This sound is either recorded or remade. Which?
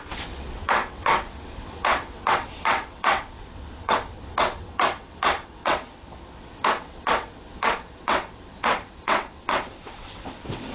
remade